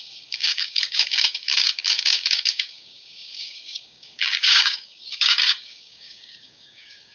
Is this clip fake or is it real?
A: fake